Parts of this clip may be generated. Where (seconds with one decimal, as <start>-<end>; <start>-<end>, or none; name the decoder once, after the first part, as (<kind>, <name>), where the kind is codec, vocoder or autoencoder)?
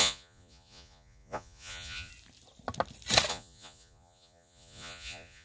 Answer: 0.0-2.1 (vocoder, Vocos); 3.3-5.4